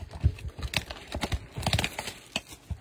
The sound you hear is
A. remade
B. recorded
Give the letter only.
B